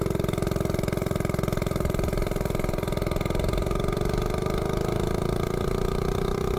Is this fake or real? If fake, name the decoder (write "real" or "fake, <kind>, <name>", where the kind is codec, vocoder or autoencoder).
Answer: real